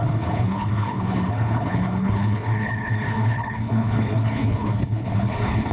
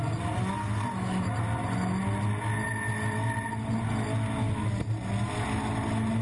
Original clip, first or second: second